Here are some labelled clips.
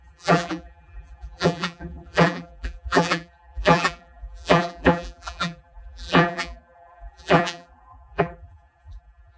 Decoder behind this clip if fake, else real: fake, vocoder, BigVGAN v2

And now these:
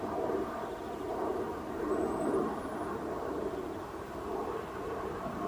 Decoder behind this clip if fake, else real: fake, vocoder, BigVGAN v2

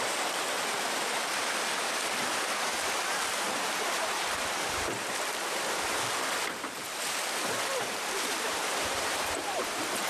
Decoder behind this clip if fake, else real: fake, vocoder, BigVGAN v2